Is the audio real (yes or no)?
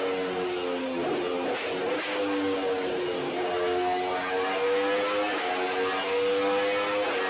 yes